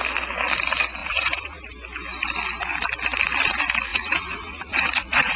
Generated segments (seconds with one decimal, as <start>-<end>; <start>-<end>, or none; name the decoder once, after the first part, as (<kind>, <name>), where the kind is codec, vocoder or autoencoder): 1.0-1.6 (vocoder, Vocos); 3.9-5.4